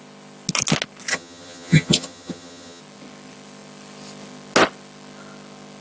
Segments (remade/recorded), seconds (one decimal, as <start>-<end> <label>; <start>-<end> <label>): 0.0-1.1 recorded; 1.1-2.8 remade; 2.8-5.8 recorded